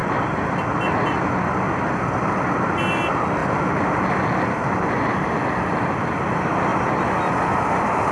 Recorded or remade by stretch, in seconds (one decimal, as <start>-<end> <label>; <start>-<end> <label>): 0.0-8.1 recorded